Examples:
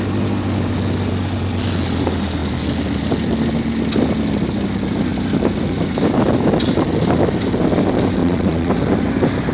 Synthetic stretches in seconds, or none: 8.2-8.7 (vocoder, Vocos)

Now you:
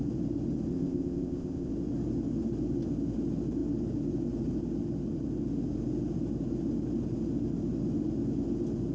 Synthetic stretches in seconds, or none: 0.7-1.7 (codec, ZipCodec)

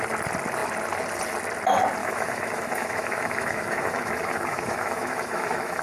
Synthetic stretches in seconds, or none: 2.0-5.8 (autoencoder, DAC-VAE)

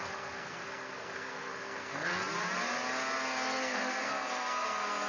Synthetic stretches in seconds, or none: 0.0-2.1 (codec, SNAC); 3.6-5.1